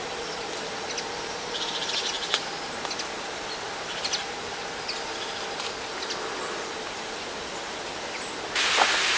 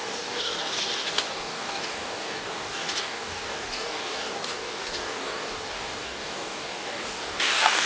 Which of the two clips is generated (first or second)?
second